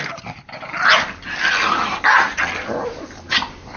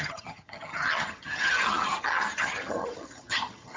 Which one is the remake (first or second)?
second